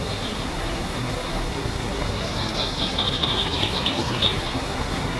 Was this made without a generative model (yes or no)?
no